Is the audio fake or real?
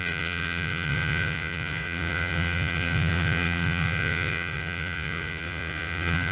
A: fake